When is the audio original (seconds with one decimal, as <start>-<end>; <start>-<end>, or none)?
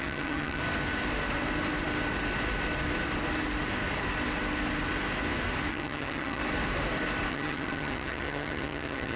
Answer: 0.6-5.7; 6.4-7.3